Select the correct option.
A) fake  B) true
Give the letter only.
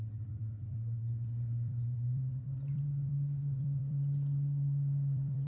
A